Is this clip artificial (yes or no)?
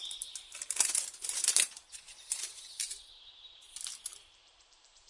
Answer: yes